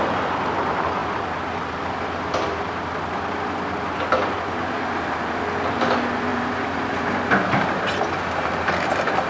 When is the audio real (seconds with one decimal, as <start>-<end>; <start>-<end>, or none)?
0.0-6.3; 8.7-9.3